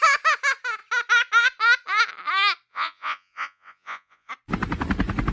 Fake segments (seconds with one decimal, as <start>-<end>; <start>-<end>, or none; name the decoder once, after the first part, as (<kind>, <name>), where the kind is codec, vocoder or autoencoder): 2.7-4.3 (vocoder, Vocos)